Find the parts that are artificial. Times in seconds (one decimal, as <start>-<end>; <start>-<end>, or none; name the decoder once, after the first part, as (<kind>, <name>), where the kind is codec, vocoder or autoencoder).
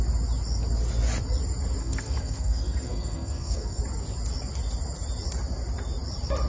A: 1.8-3.8 (codec, SNAC)